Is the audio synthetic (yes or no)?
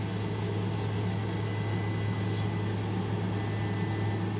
no